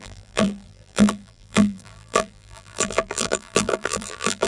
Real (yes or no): no